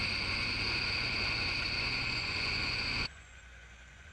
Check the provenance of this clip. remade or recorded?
remade